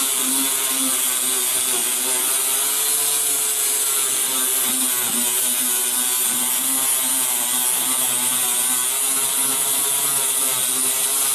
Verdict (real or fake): real